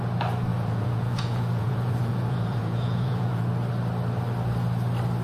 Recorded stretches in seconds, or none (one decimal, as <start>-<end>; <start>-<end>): 0.0-0.5; 3.4-5.2